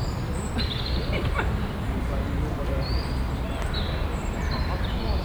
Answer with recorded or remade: remade